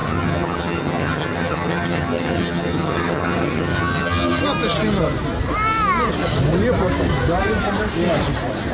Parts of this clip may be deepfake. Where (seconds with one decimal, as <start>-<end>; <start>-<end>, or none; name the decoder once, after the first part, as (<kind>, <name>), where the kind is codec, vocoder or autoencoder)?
0.0-4.4 (vocoder, HiFi-GAN)